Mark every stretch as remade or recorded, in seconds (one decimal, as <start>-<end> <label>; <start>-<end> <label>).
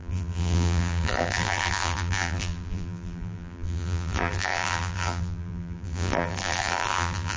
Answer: 0.0-7.4 remade